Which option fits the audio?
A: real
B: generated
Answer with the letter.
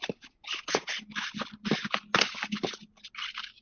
A